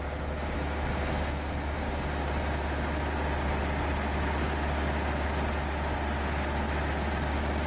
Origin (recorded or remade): recorded